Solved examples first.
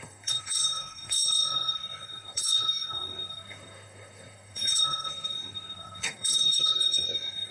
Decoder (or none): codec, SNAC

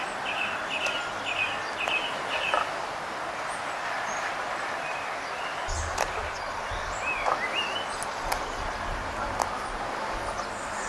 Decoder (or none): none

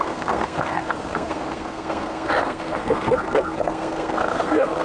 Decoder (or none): codec, SNAC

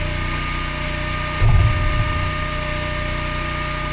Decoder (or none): none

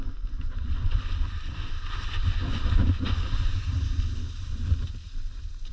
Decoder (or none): none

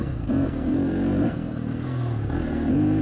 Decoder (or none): codec, SNAC